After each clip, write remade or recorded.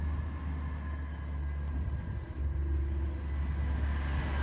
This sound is recorded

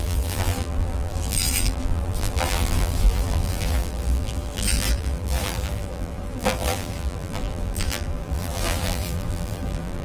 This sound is remade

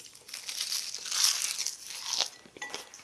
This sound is recorded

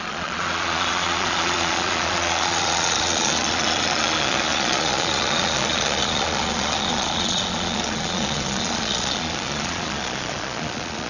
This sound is remade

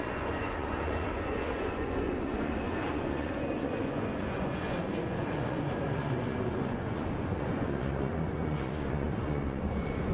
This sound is remade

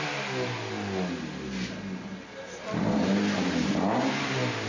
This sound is recorded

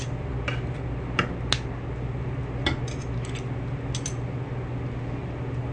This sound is recorded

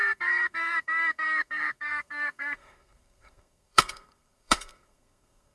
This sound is remade